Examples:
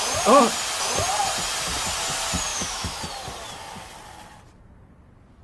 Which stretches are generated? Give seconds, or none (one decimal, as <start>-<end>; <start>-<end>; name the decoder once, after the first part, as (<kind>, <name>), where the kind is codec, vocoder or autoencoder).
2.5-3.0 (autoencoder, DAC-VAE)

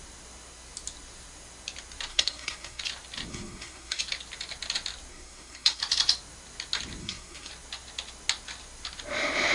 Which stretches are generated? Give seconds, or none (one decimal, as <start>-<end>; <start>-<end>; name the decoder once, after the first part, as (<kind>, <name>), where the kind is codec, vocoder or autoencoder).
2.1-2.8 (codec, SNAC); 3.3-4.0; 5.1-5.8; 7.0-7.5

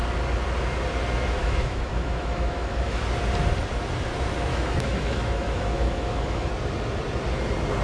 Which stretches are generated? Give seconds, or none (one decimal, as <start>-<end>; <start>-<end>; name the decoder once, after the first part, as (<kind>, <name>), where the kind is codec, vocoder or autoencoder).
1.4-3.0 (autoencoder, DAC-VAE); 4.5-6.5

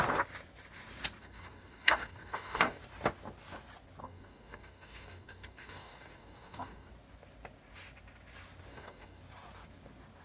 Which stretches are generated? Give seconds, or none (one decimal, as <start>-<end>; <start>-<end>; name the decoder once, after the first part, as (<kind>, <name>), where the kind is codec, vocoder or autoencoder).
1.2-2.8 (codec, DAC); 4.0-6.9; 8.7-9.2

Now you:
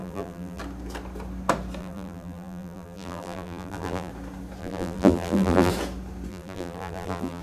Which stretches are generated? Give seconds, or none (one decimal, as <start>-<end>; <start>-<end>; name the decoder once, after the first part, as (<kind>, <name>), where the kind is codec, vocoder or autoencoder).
0.0-0.6 (vocoder, BigVGAN v2); 1.8-4.1; 4.6-5.7; 6.3-7.4

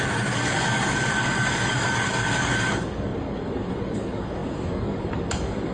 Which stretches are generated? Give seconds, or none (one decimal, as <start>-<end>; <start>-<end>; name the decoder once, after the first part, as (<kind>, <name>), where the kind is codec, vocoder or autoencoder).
0.0-5.7 (codec, DAC)

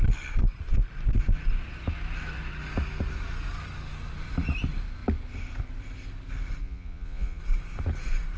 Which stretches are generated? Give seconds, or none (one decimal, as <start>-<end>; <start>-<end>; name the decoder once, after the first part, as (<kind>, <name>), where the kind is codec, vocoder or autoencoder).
6.6-7.4 (vocoder, Vocos)